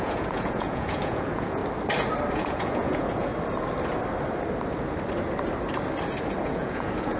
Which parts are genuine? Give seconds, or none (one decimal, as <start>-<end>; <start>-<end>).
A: 1.6-2.3; 3.3-6.4